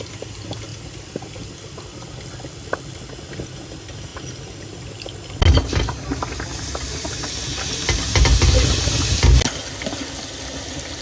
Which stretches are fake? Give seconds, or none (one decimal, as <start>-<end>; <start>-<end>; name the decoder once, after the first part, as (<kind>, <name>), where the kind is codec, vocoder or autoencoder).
0.7-1.2 (vocoder, BigVGAN v2)